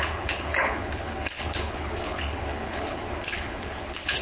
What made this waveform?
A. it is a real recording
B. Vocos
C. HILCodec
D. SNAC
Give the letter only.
C